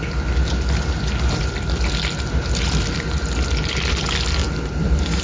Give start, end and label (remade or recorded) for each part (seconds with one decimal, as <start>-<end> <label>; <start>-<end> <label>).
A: 0.0-4.4 recorded; 4.4-5.2 remade